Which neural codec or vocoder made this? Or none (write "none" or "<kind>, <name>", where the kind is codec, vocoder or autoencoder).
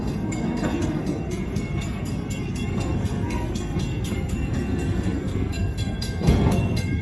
codec, SNAC